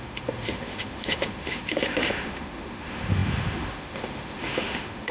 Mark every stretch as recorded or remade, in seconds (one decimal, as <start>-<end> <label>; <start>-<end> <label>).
0.0-5.1 remade